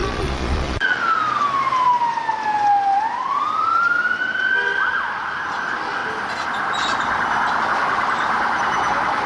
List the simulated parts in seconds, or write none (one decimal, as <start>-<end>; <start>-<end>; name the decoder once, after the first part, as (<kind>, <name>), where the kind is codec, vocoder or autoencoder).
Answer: 0.0-1.0 (vocoder, Vocos)